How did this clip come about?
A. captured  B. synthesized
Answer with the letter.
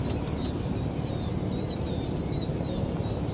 A